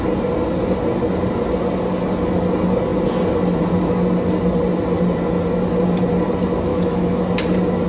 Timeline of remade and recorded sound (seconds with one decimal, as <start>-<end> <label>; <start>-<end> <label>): 0.0-6.7 recorded; 6.7-7.2 remade; 7.2-7.9 recorded